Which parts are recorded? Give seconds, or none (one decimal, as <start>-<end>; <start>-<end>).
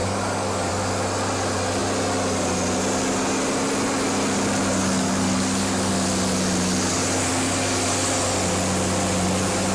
0.7-4.8; 5.9-9.7